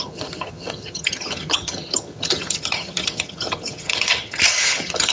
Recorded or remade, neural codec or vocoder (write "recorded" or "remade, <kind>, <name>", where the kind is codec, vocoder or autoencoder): remade, vocoder, HiFi-GAN